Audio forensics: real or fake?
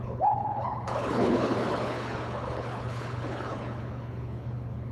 fake